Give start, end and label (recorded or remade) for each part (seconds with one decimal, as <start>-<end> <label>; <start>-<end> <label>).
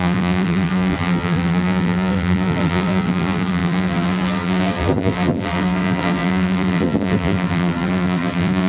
0.0-8.7 remade